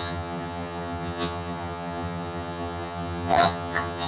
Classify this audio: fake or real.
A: fake